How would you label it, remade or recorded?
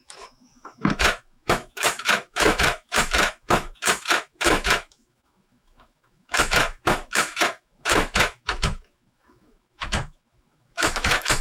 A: remade